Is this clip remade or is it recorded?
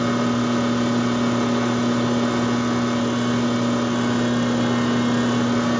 recorded